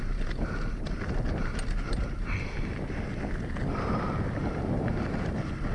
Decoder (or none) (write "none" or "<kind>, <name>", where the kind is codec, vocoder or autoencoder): none